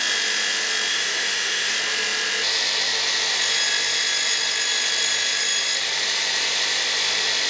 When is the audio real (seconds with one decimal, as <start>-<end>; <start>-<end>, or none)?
0.0-0.9; 1.7-7.5